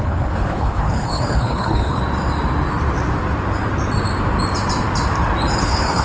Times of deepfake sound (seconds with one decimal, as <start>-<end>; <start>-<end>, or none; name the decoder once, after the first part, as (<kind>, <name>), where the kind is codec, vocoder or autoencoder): 0.0-2.0 (codec, HILCodec); 5.6-6.0